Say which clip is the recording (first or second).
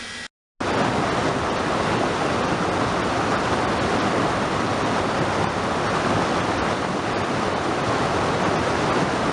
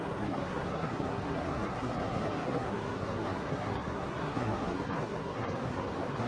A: first